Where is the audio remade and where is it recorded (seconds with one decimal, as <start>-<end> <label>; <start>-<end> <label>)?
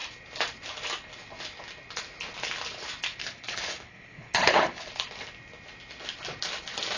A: 0.0-3.2 recorded; 3.2-4.9 remade; 4.9-7.0 recorded